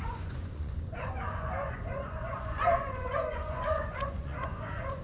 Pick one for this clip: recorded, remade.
remade